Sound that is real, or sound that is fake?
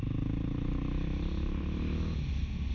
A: real